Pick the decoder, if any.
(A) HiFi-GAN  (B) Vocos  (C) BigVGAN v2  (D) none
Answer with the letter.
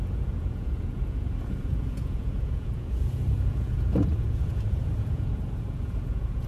B